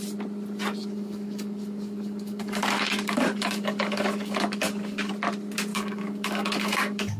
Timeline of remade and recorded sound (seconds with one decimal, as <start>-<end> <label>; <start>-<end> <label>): 0.0-0.8 recorded; 0.8-5.1 remade; 5.1-5.7 recorded; 5.7-7.2 remade